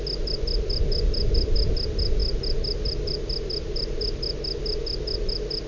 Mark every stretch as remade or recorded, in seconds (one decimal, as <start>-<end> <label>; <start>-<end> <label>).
0.0-5.7 recorded